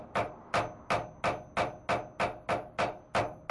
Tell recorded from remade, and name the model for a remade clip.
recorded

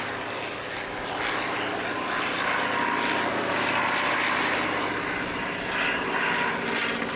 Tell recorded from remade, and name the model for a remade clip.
recorded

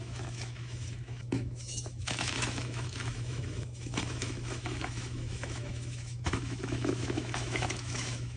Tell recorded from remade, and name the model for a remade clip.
remade, autoencoder, DAC-VAE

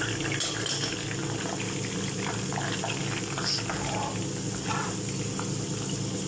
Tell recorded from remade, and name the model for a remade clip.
recorded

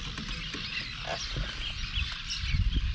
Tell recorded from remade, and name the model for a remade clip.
recorded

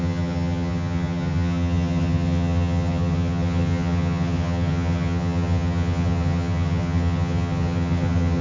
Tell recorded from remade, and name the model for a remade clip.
remade, vocoder, HiFi-GAN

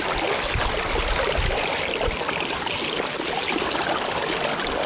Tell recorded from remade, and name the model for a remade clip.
recorded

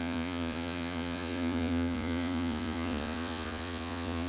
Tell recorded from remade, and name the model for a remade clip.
remade, vocoder, Vocos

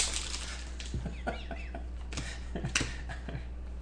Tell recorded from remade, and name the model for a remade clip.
recorded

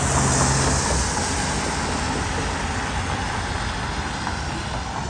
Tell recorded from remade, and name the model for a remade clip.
recorded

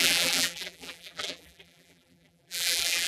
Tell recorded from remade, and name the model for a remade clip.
remade, vocoder, BigVGAN v2